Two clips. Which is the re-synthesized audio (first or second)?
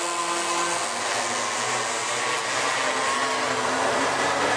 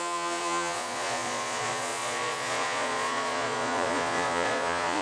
second